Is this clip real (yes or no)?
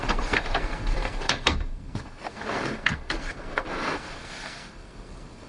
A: no